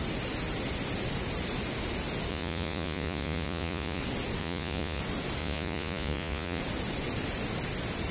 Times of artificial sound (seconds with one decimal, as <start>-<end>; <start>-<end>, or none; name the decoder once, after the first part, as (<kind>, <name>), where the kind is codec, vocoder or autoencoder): 2.3-4.0 (vocoder, Vocos); 4.4-5.0; 5.4-6.6